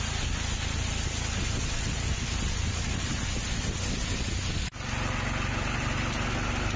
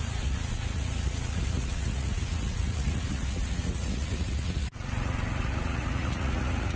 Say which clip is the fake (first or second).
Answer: second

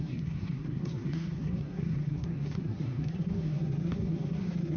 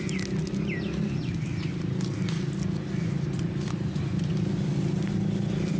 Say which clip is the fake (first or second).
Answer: first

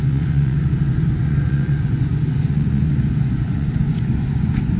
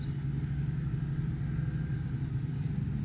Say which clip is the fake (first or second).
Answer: first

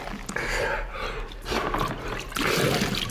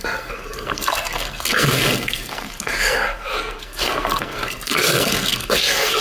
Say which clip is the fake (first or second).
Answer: second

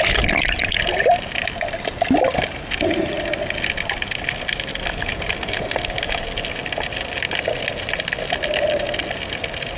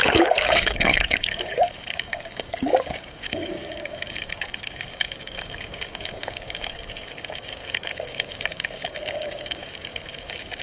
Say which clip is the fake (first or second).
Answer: second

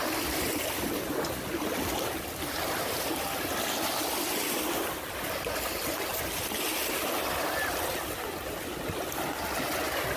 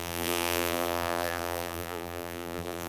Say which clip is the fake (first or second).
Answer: second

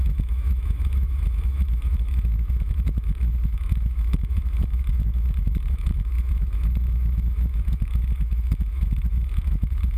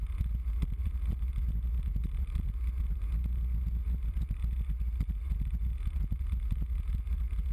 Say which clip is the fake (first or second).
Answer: first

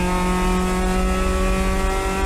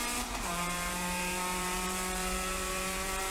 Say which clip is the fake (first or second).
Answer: second